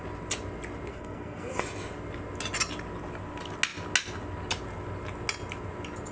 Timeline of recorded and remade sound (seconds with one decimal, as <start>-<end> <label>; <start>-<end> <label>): 0.0-0.9 recorded; 0.9-1.6 remade; 1.6-6.1 recorded